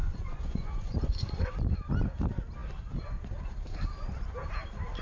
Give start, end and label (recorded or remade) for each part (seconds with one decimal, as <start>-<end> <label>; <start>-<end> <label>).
0.0-1.9 remade; 1.9-5.0 recorded